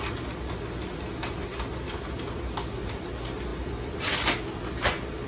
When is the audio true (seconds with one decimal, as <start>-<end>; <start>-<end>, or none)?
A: 0.0-5.3